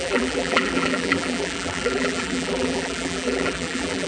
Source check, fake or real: fake